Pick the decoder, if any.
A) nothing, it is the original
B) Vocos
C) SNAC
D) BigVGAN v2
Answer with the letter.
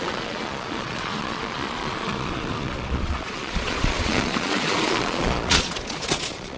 B